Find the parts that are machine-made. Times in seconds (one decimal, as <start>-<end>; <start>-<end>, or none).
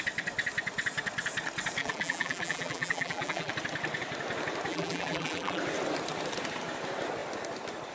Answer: 1.8-3.5; 4.7-5.6